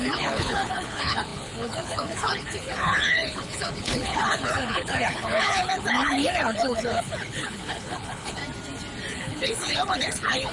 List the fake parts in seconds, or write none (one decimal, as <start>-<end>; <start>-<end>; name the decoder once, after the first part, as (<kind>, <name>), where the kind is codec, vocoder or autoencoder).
0.0-8.4 (codec, HILCodec); 9.1-10.5